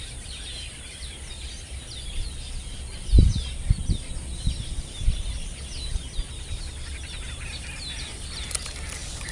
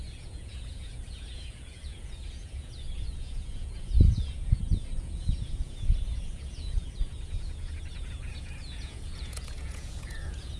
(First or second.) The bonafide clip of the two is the first